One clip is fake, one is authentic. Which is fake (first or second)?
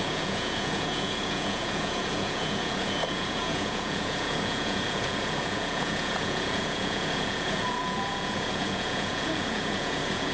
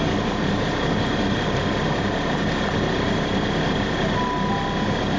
first